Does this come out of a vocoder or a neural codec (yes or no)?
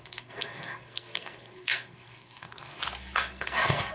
yes